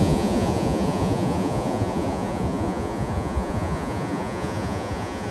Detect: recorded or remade remade